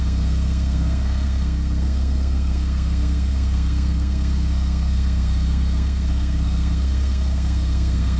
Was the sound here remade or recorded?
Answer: remade